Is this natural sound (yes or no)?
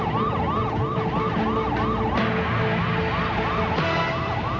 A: yes